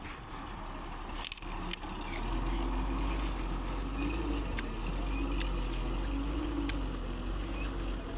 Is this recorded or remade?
recorded